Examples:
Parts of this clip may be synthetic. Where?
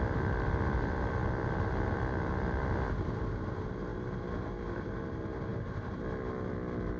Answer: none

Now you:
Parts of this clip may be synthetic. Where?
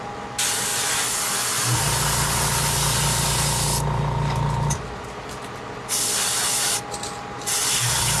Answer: none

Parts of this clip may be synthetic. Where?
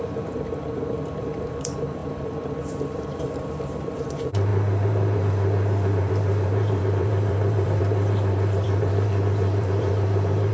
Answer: 0.0-10.5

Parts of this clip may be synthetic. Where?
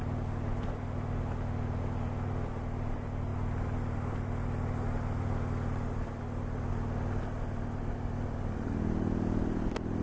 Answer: none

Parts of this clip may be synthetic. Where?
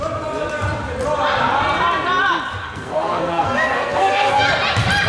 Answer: 2.6-4.5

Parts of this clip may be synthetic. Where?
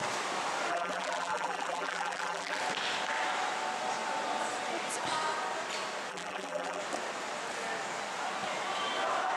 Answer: 0.7-2.6; 6.1-6.8